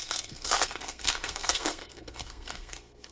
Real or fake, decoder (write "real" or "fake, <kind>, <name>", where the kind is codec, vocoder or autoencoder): fake, codec, SNAC